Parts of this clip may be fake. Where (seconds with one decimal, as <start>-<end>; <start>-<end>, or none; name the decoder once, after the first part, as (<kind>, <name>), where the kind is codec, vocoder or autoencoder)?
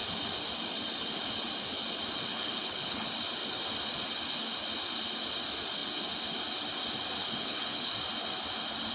2.3-3.1 (codec, HILCodec); 7.2-7.9